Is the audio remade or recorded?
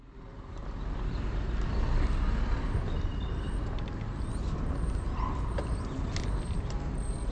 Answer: recorded